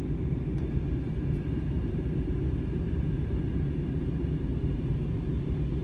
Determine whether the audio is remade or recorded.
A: recorded